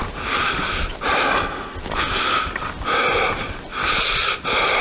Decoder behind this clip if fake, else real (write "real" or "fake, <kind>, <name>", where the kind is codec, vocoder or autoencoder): real